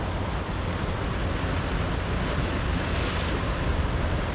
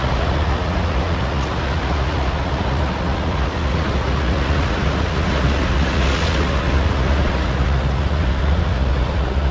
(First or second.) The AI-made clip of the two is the second